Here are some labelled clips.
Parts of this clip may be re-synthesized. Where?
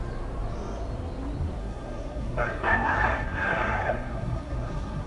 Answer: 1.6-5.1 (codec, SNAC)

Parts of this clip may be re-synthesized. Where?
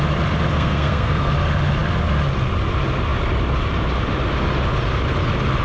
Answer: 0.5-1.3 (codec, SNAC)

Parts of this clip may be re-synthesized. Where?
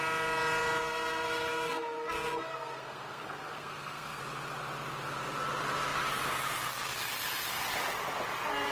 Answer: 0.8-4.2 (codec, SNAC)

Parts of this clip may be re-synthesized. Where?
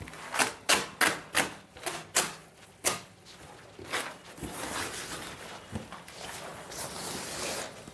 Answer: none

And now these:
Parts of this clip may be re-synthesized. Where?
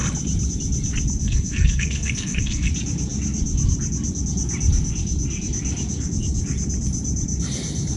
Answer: 1.2-2.7 (codec, SNAC)